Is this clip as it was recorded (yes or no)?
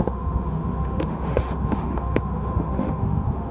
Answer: no